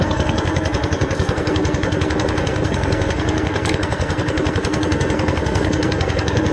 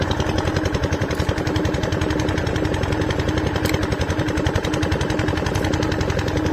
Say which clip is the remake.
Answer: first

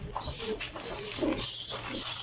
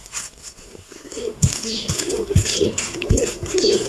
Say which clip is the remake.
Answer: second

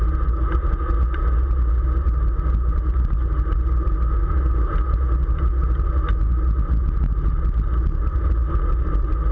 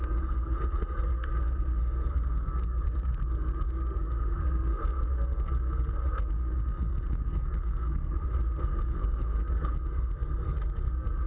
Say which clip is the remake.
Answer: second